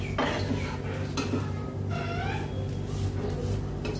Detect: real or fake real